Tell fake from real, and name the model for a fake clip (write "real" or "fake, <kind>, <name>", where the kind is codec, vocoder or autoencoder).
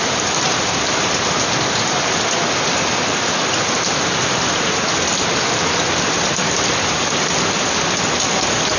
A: real